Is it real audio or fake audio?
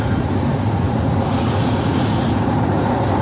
fake